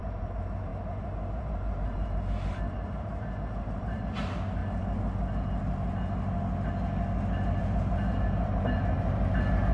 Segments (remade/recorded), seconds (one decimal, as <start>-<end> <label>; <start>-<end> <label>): 0.0-4.6 remade; 4.6-7.6 recorded; 7.6-9.7 remade